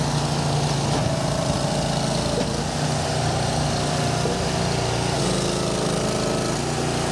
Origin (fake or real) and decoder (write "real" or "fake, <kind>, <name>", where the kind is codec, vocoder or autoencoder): real